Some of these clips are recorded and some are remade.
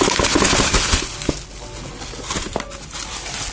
recorded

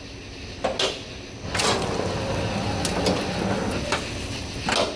recorded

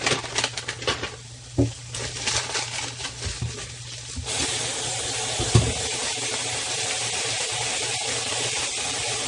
recorded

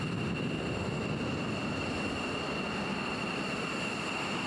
recorded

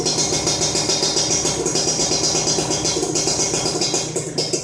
recorded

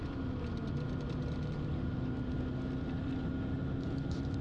recorded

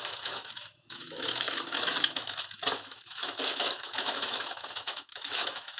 remade